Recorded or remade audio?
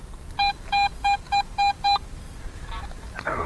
recorded